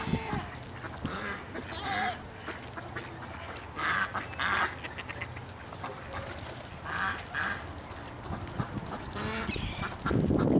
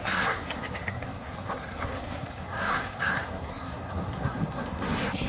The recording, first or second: first